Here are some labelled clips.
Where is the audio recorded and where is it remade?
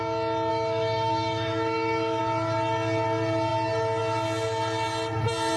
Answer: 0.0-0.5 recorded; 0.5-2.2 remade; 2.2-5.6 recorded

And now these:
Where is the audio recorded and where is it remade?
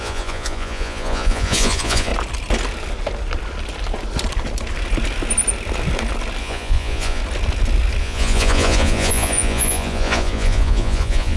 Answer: 0.0-2.1 remade; 2.1-6.4 recorded; 6.4-7.2 remade; 7.2-8.0 recorded; 8.0-11.4 remade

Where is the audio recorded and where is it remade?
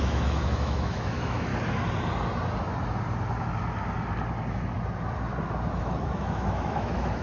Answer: 0.0-1.5 remade; 1.5-5.8 recorded; 5.8-7.2 remade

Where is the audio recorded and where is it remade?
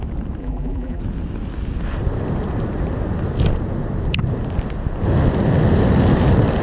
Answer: 0.0-0.4 recorded; 0.4-1.0 remade; 1.0-6.6 recorded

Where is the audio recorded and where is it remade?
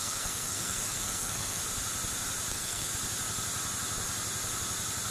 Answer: 0.0-1.6 remade; 1.6-2.5 recorded; 2.5-2.9 remade; 2.9-5.1 recorded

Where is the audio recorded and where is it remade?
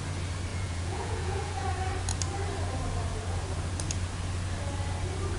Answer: 0.0-0.5 recorded; 0.5-1.7 remade; 1.7-5.4 recorded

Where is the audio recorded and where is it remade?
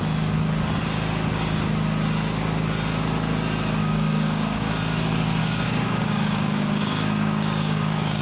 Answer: 0.0-3.8 recorded; 3.8-4.7 remade; 4.7-5.4 recorded; 5.4-8.2 remade